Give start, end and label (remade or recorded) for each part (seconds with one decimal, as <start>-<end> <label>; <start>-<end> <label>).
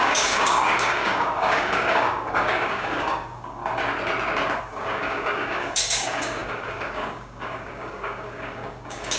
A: 0.0-3.6 remade; 3.6-4.6 recorded; 4.6-9.2 remade